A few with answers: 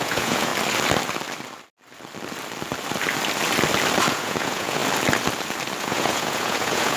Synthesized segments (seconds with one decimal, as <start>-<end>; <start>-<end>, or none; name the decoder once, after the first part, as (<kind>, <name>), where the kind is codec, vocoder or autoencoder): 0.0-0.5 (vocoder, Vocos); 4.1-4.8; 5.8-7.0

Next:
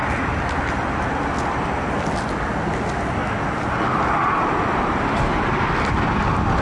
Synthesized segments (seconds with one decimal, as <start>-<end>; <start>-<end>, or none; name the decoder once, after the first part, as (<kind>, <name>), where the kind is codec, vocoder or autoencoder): none

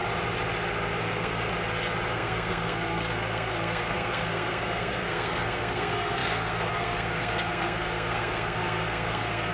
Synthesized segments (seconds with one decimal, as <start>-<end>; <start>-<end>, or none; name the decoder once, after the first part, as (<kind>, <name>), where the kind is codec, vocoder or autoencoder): 1.0-1.5 (codec, SNAC); 2.1-9.5